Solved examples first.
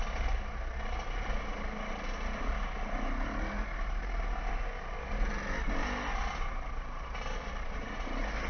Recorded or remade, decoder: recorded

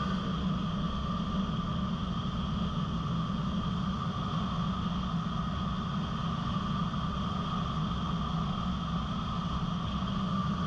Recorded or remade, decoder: recorded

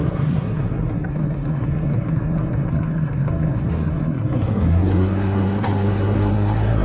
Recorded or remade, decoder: remade, codec, SNAC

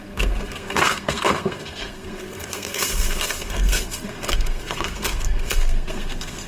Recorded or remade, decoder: remade, codec, SNAC